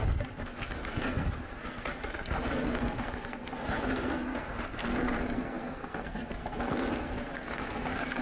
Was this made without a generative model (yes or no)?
no